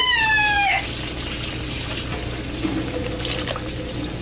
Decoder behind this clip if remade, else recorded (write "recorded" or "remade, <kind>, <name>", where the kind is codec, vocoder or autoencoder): recorded